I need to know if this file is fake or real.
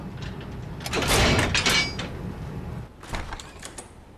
real